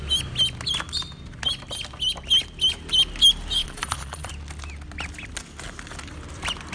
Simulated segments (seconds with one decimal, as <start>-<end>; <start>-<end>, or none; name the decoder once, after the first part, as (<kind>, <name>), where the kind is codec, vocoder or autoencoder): 3.6-4.3 (vocoder, Vocos)

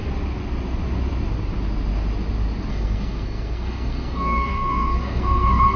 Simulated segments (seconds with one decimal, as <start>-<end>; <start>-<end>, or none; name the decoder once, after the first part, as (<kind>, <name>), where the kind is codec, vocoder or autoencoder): 2.7-5.8 (codec, SNAC)

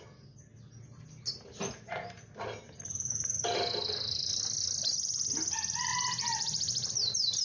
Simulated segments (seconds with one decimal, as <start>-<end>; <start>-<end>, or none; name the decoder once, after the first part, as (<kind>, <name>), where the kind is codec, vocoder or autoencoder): none

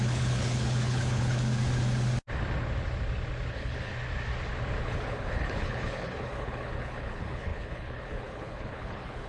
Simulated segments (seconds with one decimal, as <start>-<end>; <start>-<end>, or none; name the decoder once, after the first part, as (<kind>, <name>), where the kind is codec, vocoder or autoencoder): 0.0-1.5 (codec, HILCodec); 3.5-3.9; 4.8-9.3

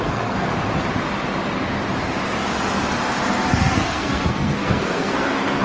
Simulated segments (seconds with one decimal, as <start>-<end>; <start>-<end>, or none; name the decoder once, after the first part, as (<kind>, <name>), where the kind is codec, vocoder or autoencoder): 0.0-0.5 (codec, SNAC); 3.5-5.6